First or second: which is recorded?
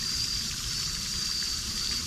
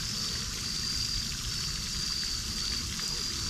second